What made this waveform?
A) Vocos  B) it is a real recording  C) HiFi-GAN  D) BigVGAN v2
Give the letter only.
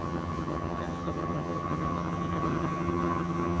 C